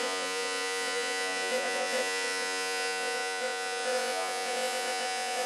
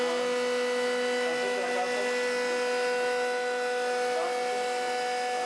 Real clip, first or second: second